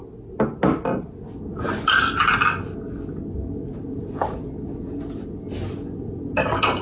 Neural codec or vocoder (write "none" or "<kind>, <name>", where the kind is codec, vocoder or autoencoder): none